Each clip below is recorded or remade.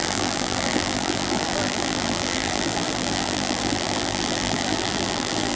remade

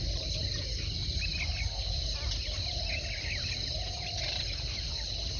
recorded